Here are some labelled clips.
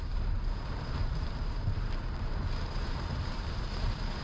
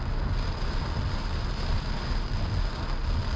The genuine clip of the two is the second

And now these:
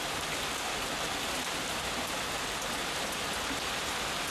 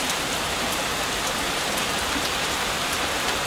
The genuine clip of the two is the first